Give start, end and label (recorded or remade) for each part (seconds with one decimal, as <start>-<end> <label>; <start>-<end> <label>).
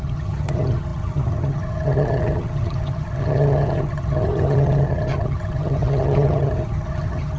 0.0-7.4 remade